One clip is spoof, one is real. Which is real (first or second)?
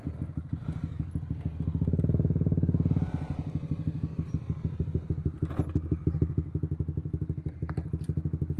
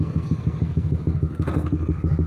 first